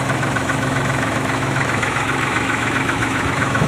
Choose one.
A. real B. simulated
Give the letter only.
B